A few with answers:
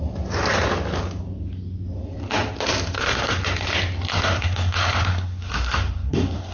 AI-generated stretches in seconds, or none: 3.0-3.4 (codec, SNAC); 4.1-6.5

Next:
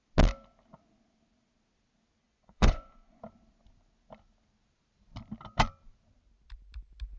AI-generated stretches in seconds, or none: 2.2-3.2 (vocoder, Vocos)

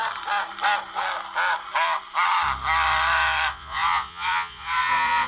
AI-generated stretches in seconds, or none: 3.5-5.3 (vocoder, Vocos)

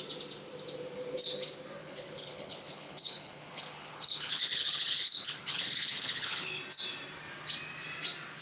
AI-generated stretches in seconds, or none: 1.8-6.6 (codec, HILCodec)